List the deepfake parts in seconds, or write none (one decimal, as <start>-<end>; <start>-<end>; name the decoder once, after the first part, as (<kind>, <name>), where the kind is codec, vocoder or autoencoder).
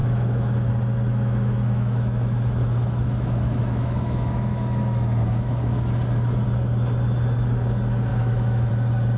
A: 0.0-0.7 (autoencoder, DAC-VAE); 1.1-5.9; 8.1-8.7